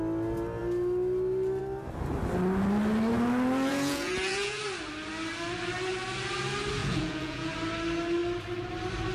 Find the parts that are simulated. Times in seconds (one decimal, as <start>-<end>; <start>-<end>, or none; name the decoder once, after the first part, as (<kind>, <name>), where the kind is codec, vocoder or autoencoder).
3.7-4.6 (vocoder, Vocos); 6.8-7.5